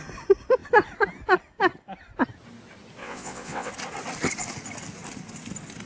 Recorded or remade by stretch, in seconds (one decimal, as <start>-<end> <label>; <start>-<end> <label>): 0.0-3.0 recorded; 3.0-3.7 remade; 3.7-5.9 recorded

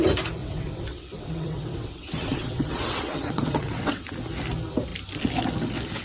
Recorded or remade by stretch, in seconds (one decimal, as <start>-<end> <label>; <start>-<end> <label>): 0.0-0.4 recorded; 0.4-4.0 remade; 4.0-6.0 recorded

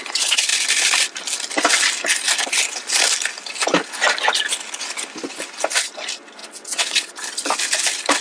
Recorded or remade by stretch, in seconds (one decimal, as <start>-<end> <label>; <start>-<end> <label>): 0.0-6.4 recorded; 6.4-7.1 remade; 7.1-8.2 recorded

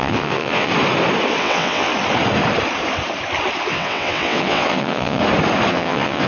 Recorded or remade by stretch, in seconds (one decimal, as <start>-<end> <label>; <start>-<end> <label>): 0.0-0.7 remade; 0.7-1.4 recorded; 1.4-1.9 remade; 1.9-3.7 recorded; 3.7-5.2 remade; 5.2-5.7 recorded; 5.7-6.3 remade

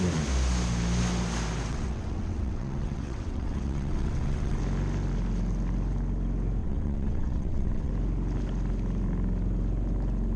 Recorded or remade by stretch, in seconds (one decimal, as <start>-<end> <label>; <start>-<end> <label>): 0.0-1.7 recorded; 1.7-4.6 remade; 4.6-6.6 recorded; 6.6-7.9 remade; 7.9-10.4 recorded